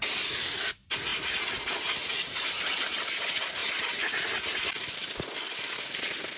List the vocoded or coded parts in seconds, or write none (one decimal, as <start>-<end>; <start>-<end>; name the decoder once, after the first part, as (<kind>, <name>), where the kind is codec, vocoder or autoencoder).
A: none